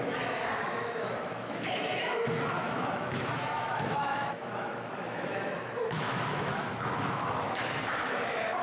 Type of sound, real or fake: fake